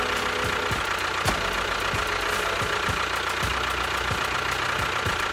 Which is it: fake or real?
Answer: real